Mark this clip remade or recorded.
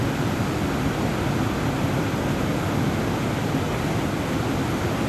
recorded